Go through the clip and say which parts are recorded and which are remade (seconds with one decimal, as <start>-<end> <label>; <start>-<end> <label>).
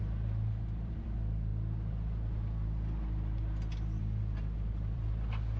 0.0-1.5 remade; 1.5-4.0 recorded; 4.0-5.6 remade